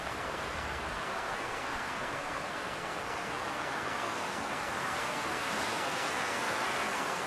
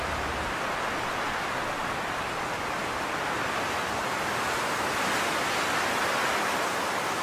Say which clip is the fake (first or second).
first